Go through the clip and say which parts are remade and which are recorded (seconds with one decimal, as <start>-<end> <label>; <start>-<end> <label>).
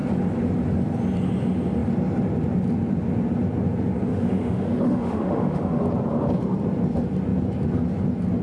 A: 0.0-4.1 recorded; 4.1-5.8 remade; 5.8-8.4 recorded